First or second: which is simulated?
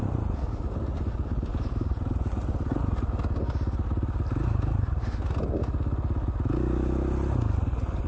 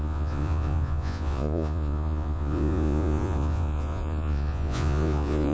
second